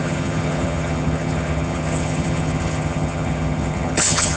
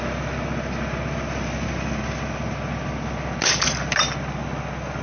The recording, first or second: second